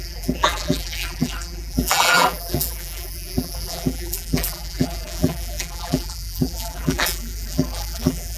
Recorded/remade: remade